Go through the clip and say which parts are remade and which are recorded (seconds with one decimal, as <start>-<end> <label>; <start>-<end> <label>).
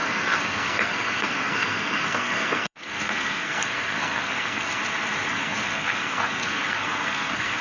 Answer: 0.0-4.8 remade; 4.8-5.3 recorded; 5.3-7.6 remade